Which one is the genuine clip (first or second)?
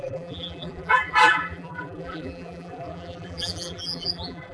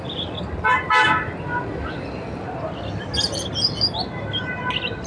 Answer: second